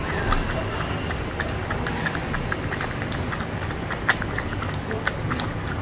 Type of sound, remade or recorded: recorded